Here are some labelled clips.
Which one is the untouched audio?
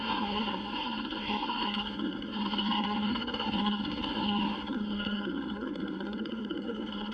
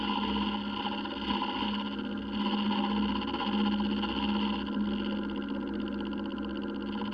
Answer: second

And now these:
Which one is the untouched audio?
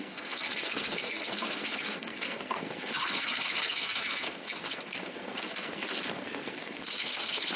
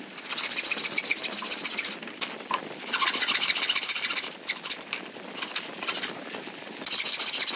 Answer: second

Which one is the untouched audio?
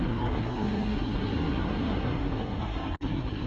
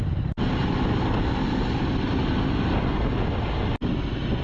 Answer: second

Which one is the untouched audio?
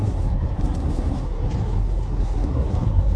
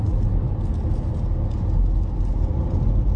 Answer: second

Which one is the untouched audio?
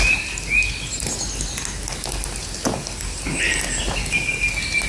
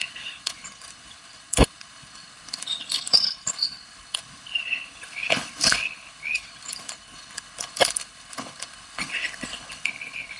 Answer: first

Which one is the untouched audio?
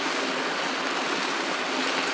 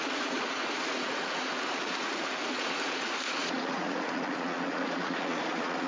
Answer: first